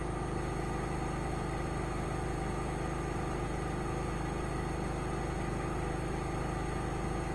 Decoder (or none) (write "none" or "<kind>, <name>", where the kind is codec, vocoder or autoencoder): none